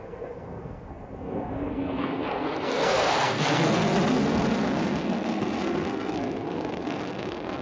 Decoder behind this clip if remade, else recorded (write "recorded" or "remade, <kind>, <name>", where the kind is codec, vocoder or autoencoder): remade, codec, SNAC